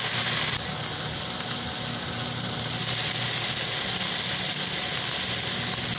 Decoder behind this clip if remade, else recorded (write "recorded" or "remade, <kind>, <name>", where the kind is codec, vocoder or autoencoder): recorded